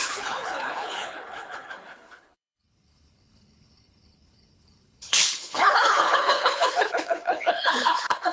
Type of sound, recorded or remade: remade